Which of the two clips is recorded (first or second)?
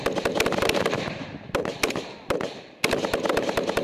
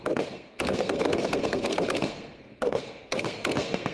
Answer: first